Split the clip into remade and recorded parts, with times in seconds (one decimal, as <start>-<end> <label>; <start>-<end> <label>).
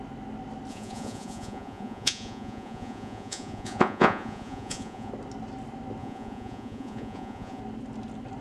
0.0-0.7 recorded; 0.7-5.1 remade; 5.1-6.0 recorded; 6.0-7.6 remade; 7.6-8.4 recorded